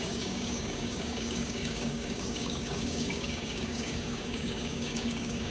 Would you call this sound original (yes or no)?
no